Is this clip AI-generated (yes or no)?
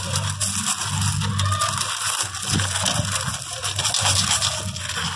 no